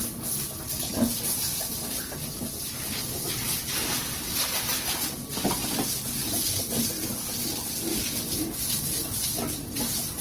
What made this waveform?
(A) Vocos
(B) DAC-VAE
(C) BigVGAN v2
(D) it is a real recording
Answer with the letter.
D